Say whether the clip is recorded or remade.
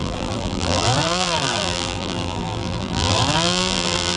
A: remade